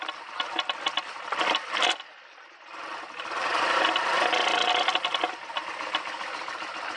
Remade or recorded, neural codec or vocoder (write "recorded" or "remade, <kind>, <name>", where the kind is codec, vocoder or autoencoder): recorded